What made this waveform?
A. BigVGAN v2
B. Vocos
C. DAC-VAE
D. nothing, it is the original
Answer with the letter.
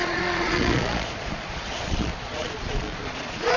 B